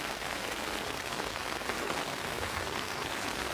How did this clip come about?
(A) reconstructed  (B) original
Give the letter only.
A